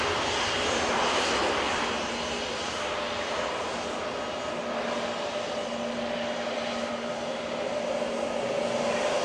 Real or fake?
real